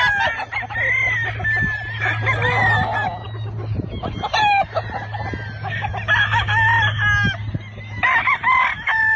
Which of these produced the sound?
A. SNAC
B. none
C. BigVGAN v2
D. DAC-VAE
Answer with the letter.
B